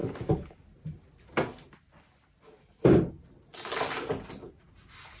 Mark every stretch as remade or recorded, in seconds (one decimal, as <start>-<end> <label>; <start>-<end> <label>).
0.0-5.2 recorded